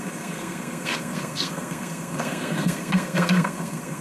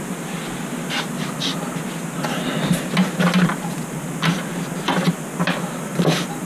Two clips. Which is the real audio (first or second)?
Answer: second